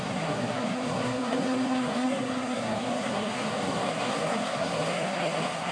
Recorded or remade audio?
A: remade